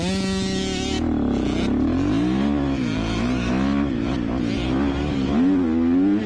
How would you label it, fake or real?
real